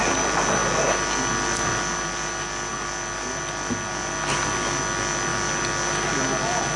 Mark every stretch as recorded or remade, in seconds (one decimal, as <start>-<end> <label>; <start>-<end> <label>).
0.0-6.8 recorded